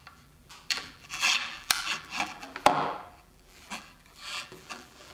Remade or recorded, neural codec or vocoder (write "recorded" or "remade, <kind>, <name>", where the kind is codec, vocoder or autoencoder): remade, vocoder, BigVGAN v2